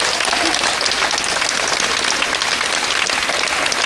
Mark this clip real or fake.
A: real